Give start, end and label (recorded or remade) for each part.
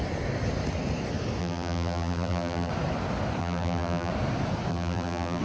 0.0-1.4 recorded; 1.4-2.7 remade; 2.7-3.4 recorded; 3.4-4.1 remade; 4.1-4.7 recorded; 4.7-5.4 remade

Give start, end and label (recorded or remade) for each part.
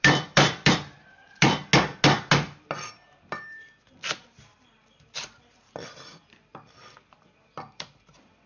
0.0-1.7 remade; 1.7-5.0 recorded; 5.0-8.5 remade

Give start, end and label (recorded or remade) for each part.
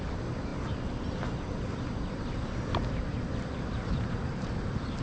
0.0-0.5 remade; 0.5-3.5 recorded; 3.5-5.0 remade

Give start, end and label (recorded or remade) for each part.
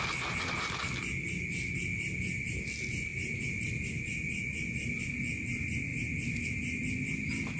0.0-7.6 recorded